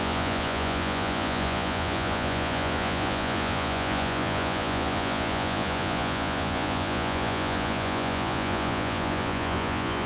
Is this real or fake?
fake